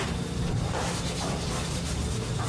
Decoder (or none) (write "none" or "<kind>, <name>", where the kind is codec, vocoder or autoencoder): none